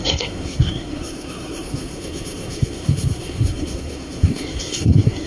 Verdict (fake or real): fake